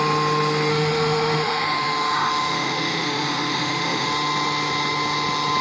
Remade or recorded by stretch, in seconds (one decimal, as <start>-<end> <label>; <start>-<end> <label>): 0.0-0.7 recorded; 0.7-4.1 remade; 4.1-5.6 recorded